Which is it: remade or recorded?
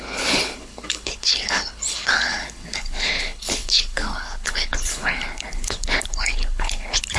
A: remade